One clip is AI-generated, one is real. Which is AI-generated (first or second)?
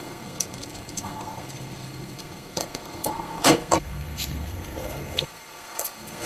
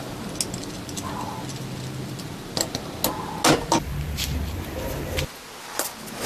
first